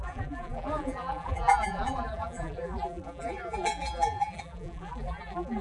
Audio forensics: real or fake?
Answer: fake